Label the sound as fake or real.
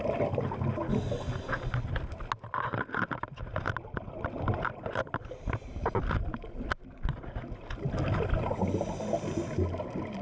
real